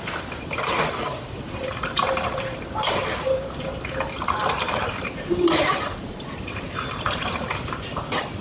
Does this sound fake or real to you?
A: fake